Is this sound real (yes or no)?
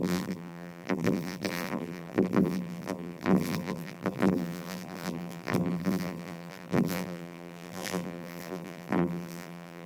no